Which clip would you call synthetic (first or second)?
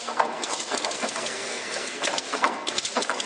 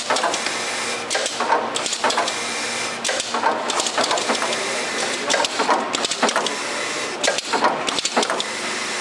first